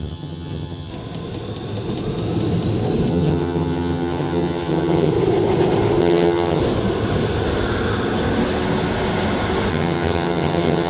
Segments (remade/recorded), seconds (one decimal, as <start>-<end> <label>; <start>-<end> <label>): 0.0-0.9 remade; 0.9-3.1 recorded; 3.1-5.1 remade; 5.1-6.0 recorded; 6.0-6.6 remade; 6.6-9.7 recorded; 9.7-10.9 remade

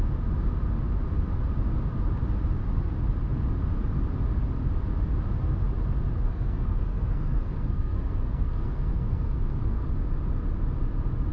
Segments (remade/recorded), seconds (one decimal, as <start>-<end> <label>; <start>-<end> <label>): 0.0-6.3 recorded; 6.3-9.9 remade; 9.9-11.3 recorded

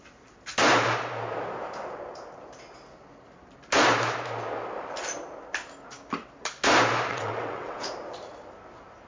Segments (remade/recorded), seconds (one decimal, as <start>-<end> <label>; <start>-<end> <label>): 0.0-7.1 recorded; 7.1-7.8 remade; 7.8-9.1 recorded